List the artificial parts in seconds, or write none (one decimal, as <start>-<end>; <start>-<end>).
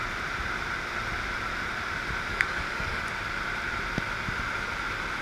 2.3-3.0